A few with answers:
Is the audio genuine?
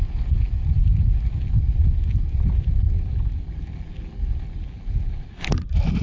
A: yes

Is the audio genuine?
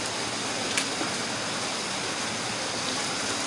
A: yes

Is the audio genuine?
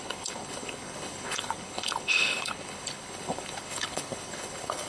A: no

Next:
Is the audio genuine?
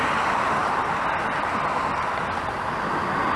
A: yes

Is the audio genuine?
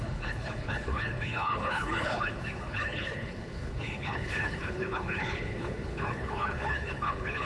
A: no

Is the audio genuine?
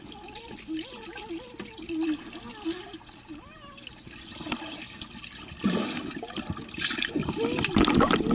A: yes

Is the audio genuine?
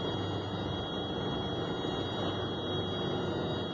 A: yes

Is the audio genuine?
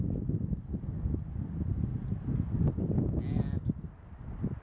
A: yes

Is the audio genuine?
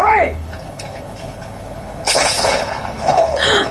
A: no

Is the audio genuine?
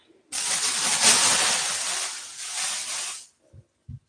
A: yes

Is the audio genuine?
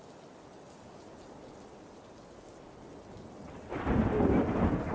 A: yes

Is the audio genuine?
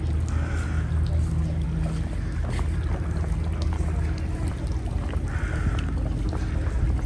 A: yes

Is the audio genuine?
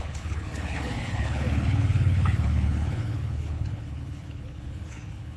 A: no